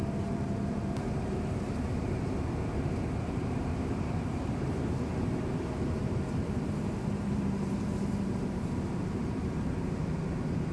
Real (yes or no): no